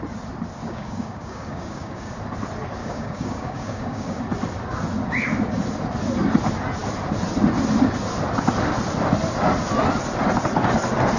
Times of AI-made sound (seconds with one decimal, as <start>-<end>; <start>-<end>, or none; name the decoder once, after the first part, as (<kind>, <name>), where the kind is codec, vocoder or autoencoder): 0.6-2.1 (codec, DAC); 2.8-4.2